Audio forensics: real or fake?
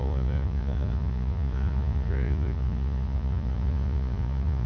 fake